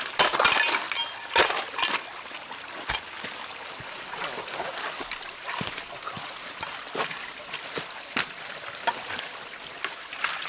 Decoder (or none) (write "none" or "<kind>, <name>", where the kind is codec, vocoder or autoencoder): none